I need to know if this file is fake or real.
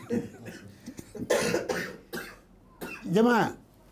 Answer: real